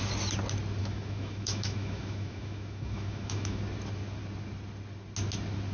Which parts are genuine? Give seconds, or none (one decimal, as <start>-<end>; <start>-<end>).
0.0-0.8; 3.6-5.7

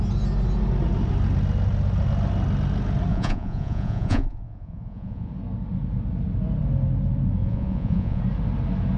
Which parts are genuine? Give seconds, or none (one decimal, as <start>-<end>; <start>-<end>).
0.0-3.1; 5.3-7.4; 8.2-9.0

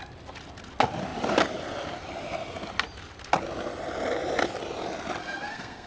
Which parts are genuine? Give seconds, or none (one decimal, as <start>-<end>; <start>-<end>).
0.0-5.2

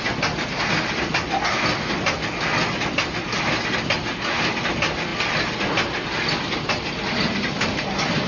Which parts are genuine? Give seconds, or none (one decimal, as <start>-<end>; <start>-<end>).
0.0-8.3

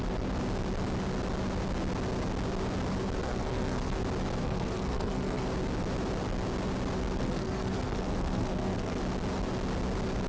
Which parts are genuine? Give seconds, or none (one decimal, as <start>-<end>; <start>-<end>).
0.0-3.2; 4.0-4.4; 5.4-7.2; 9.0-10.3